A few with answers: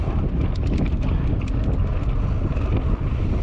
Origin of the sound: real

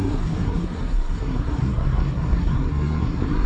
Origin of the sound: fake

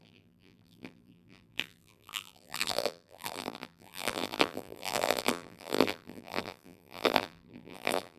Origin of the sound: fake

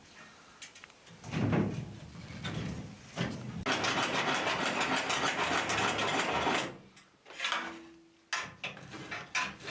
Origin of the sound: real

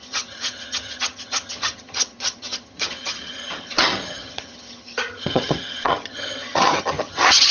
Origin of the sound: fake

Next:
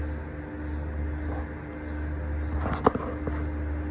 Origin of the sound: real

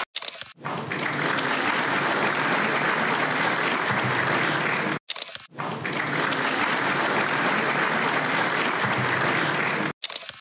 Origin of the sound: real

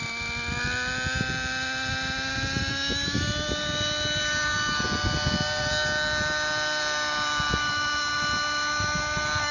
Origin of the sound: real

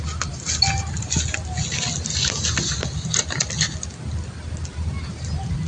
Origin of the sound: real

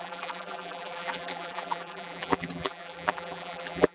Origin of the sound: fake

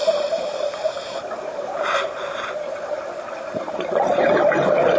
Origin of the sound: fake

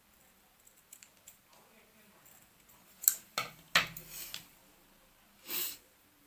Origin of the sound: real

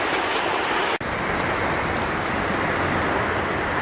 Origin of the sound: real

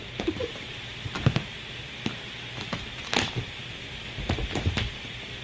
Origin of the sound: fake